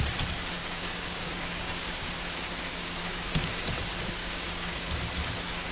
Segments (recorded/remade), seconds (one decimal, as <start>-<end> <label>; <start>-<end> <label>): 0.0-0.6 recorded; 0.6-2.1 remade; 2.1-2.7 recorded; 2.7-3.5 remade; 3.5-4.2 recorded; 4.2-4.9 remade; 4.9-5.7 recorded